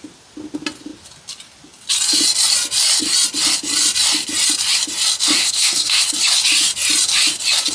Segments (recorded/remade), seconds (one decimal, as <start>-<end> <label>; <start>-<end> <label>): 0.0-5.4 recorded; 5.4-6.0 remade; 6.0-7.7 recorded